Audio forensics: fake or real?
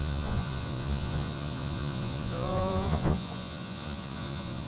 fake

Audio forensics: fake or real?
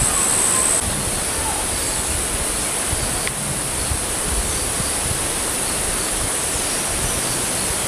real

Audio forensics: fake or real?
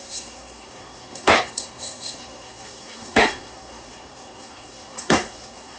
fake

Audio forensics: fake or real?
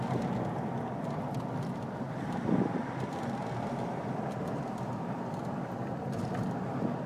real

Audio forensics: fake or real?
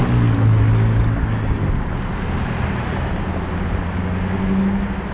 real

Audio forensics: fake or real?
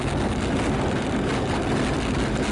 real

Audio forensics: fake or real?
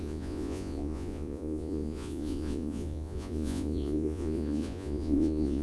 fake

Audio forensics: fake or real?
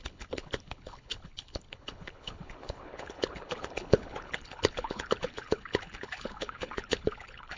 fake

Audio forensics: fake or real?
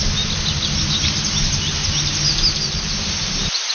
real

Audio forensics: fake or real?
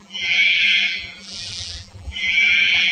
fake